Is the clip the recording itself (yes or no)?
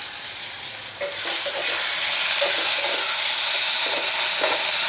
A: yes